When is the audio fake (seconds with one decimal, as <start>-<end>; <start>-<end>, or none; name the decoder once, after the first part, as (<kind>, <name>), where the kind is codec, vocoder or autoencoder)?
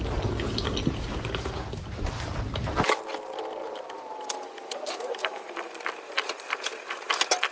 1.1-1.6 (vocoder, BigVGAN v2); 3.6-7.1